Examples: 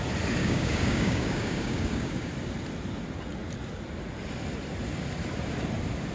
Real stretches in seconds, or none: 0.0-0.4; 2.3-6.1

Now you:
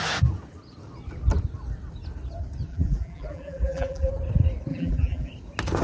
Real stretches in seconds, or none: 0.0-2.7; 4.1-4.7; 5.3-5.8

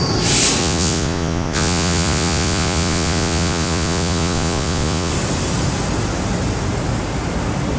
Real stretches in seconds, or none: 0.0-0.6; 5.1-7.8

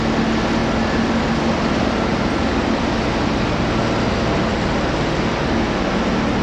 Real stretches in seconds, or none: 0.0-2.1; 3.6-6.4

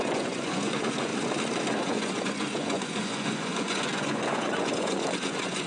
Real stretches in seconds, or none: 1.1-1.8

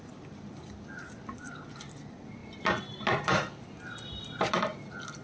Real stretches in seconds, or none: 0.0-5.2

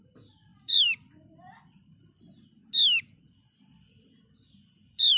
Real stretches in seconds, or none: 2.6-4.3